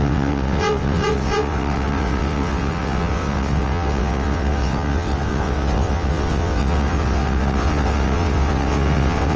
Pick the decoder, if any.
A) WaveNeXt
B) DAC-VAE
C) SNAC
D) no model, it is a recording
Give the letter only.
A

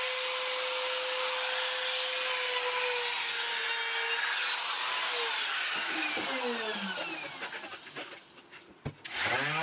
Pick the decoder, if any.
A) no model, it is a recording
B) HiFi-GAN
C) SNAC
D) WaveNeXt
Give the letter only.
A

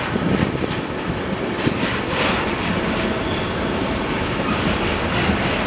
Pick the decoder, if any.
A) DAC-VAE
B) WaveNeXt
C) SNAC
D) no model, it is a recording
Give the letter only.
D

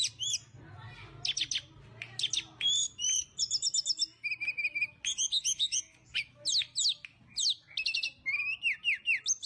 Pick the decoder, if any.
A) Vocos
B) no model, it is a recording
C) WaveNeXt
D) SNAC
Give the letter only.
B